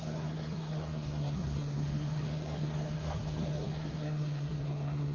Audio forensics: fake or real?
fake